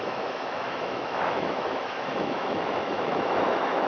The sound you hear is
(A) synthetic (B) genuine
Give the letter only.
A